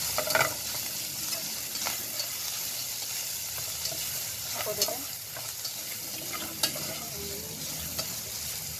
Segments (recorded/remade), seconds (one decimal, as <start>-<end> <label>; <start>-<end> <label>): 0.0-8.8 recorded